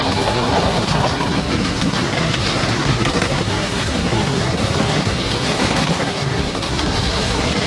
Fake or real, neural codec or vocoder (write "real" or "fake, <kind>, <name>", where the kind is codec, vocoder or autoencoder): fake, codec, SNAC